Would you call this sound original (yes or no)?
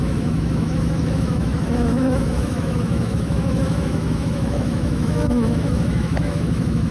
no